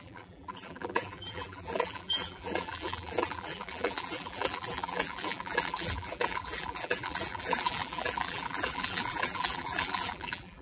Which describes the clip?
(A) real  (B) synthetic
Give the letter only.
B